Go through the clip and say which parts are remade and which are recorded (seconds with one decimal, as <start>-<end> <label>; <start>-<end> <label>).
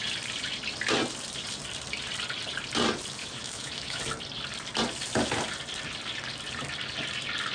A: 0.0-3.2 recorded; 3.2-4.0 remade; 4.0-7.5 recorded